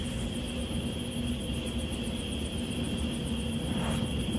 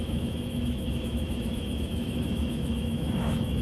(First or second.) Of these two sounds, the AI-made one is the second